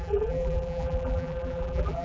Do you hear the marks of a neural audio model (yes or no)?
yes